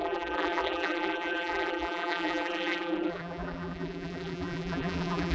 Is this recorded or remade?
remade